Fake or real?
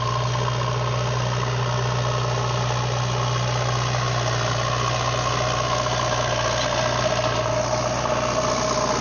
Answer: real